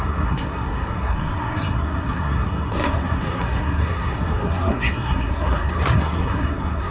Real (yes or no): no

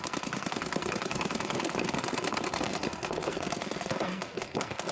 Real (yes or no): no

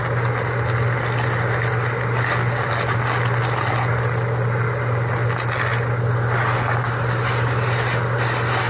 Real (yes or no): yes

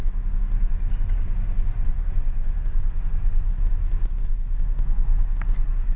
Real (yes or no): yes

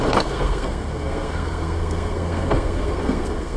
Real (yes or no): no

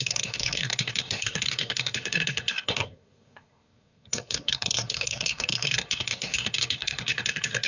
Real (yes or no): no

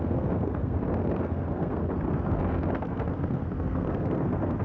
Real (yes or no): no